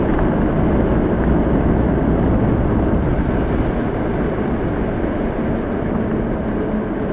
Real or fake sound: real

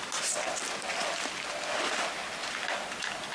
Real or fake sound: real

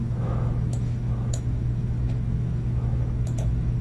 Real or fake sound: fake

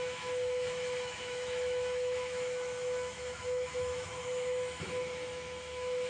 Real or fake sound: fake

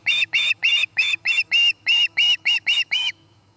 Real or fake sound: fake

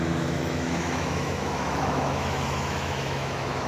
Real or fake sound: fake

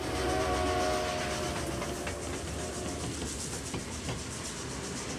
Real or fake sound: real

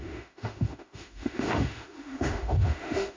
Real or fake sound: fake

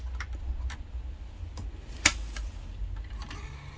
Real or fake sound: real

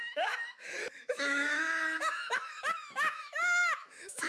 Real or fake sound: fake